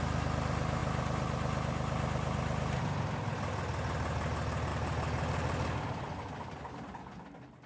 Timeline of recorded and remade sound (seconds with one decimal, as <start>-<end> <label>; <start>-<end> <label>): 0.0-7.7 recorded